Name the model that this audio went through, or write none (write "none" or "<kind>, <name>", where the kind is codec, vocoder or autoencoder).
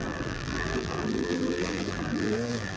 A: vocoder, BigVGAN v2